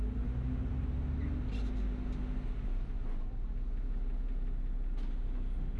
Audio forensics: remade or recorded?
recorded